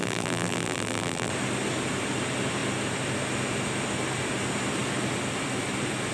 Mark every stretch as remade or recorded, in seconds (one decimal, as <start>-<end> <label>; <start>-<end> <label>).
0.0-1.3 remade; 1.3-6.1 recorded